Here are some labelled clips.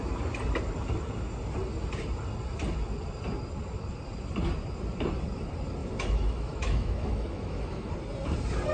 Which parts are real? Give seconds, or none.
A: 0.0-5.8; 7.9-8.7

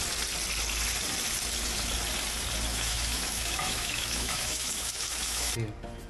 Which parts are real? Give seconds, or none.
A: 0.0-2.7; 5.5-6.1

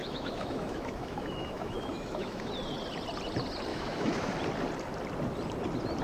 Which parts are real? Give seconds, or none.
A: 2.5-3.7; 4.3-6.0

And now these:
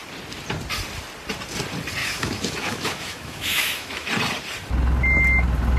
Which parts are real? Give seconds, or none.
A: 0.0-2.0; 4.1-5.8

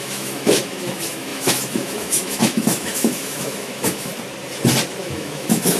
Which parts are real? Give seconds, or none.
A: 4.1-5.0